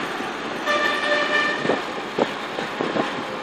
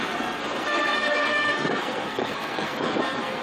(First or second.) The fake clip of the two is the second